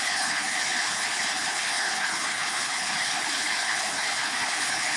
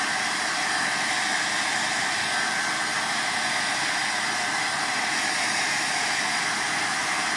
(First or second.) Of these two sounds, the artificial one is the first